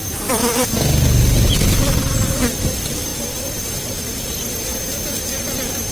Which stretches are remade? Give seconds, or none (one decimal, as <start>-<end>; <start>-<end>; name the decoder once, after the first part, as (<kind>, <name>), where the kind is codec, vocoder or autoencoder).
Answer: 0.0-0.4 (vocoder, BigVGAN v2); 1.8-4.7; 5.2-5.9